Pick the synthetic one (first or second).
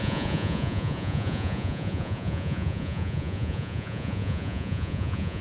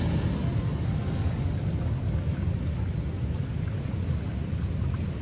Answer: first